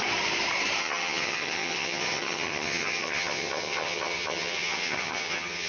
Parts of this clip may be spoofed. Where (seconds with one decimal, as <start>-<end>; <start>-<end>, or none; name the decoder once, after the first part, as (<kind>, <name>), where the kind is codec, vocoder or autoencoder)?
0.8-5.7 (vocoder, HiFi-GAN)